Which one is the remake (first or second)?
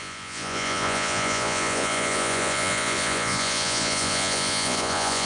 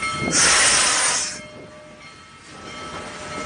first